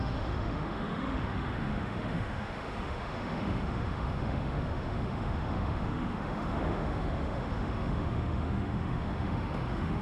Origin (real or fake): fake